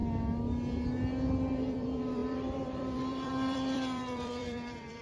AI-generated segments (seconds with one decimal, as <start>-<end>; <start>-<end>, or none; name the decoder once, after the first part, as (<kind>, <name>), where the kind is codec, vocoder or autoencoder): 1.5-5.0 (vocoder, BigVGAN v2)